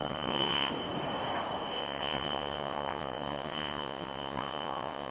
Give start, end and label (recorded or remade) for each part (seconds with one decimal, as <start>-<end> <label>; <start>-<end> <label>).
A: 0.0-0.7 remade; 0.7-1.8 recorded; 1.8-5.1 remade